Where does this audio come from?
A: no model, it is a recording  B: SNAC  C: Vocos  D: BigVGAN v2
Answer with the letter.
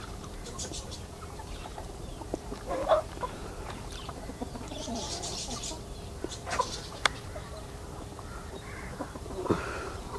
D